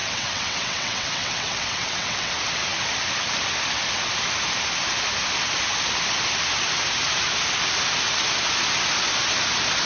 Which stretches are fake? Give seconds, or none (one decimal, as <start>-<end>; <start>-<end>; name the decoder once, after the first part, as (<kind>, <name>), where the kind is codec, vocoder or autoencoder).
0.0-2.3 (vocoder, WaveNeXt)